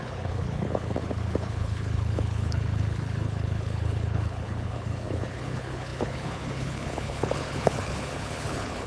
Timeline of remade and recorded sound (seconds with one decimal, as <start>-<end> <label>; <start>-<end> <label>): 0.0-8.9 remade